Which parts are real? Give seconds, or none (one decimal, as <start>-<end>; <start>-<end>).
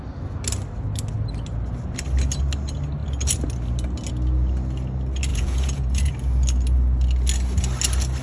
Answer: 0.0-5.3; 6.1-8.2